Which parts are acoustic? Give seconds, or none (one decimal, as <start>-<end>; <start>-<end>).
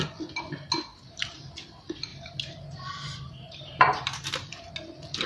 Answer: 0.0-0.9; 1.5-2.1; 4.7-5.3